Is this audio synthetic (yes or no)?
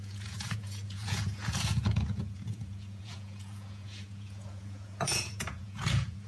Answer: yes